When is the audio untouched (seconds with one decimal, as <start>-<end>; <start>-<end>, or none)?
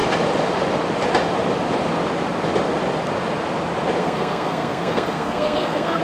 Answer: 0.0-4.0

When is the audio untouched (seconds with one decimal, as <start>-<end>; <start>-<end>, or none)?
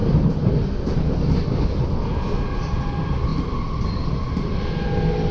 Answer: 0.5-5.3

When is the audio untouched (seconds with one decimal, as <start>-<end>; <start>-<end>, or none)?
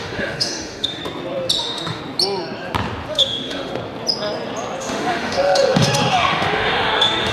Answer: 1.0-1.6; 2.0-3.1; 3.7-4.8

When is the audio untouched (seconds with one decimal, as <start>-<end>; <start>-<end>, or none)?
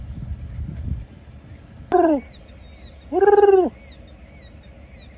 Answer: 0.0-5.2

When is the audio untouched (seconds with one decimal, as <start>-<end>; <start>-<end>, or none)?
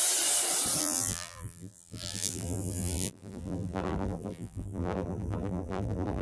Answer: 0.0-0.8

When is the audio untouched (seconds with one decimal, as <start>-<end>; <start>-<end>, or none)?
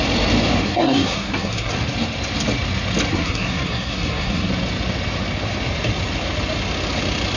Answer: 0.0-0.6; 1.7-3.1; 4.5-7.4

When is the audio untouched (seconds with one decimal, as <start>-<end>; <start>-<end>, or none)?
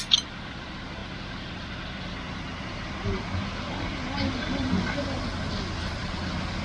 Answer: 0.0-6.6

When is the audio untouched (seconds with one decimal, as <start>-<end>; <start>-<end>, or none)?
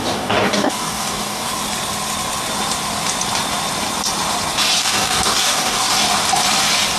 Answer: 1.5-4.8; 5.9-7.0